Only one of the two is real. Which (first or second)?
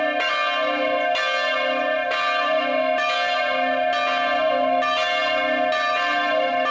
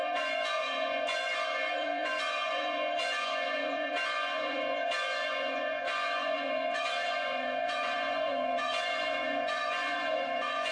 first